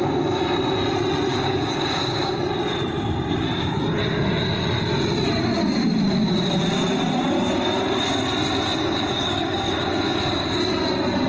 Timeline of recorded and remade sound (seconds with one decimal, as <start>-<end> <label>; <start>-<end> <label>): 0.0-1.3 recorded; 1.3-2.4 remade; 2.4-8.8 recorded; 8.8-10.6 remade; 10.6-11.3 recorded